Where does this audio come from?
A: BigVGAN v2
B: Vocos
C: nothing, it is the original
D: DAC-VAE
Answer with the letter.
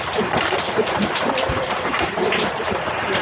A